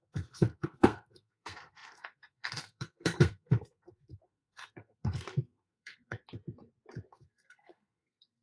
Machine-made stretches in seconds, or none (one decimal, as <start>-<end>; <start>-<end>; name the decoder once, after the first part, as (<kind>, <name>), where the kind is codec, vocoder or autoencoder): 0.0-6.2 (codec, SNAC); 7.1-8.4